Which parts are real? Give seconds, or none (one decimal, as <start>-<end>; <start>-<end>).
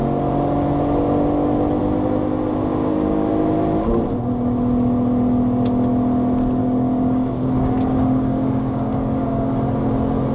0.0-2.7; 3.3-6.6; 9.5-10.3